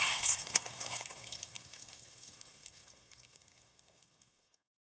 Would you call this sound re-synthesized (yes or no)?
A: yes